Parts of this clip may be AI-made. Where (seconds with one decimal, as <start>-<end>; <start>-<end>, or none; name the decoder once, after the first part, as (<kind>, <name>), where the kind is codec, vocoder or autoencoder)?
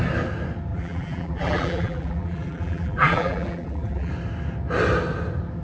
0.7-4.1 (vocoder, BigVGAN v2)